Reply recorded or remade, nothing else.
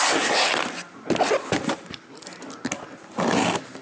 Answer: recorded